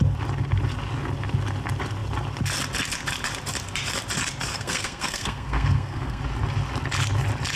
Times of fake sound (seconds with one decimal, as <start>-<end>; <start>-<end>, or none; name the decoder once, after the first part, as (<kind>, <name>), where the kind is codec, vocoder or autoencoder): 4.5-6.2 (codec, SNAC)